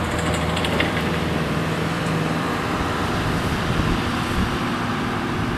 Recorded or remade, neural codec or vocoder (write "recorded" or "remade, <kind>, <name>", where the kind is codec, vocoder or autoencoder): remade, vocoder, BigVGAN v2